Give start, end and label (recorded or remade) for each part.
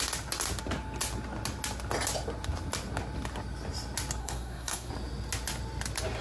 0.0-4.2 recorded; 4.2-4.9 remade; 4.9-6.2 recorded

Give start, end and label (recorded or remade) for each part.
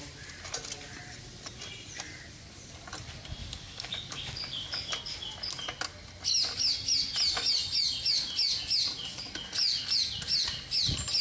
0.0-3.4 recorded; 3.4-4.9 remade; 4.9-11.2 recorded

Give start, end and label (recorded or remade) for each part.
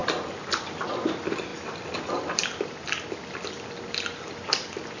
0.0-5.0 recorded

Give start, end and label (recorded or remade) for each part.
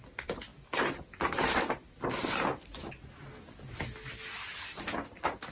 0.0-5.5 recorded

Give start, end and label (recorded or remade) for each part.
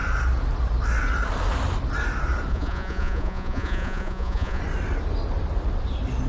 0.0-2.5 recorded; 2.5-4.6 remade; 4.6-6.3 recorded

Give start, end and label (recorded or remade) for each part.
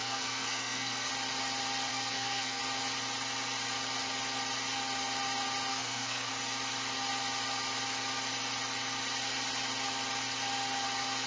0.0-1.1 remade; 1.1-1.9 recorded; 1.9-2.6 remade; 2.6-5.7 recorded; 5.7-6.3 remade; 6.3-11.3 recorded